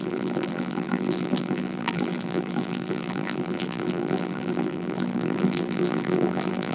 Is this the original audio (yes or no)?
no